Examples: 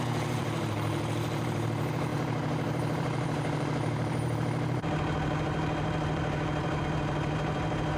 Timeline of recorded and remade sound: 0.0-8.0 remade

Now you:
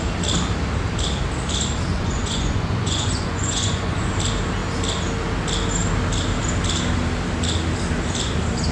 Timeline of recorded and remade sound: 0.0-1.9 recorded; 1.9-4.1 remade; 4.1-8.7 recorded

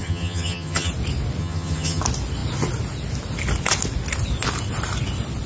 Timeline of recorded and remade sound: 0.0-0.9 remade; 0.9-1.4 recorded; 1.4-2.0 remade; 2.0-5.5 recorded